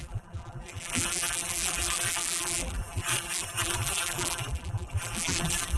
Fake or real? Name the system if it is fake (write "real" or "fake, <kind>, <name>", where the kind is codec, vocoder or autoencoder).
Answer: fake, vocoder, BigVGAN v2